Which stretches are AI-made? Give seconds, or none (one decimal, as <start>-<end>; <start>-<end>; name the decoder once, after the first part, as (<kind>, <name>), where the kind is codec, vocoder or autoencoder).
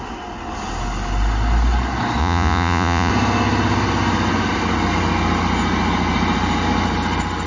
2.2-3.1 (vocoder, Vocos)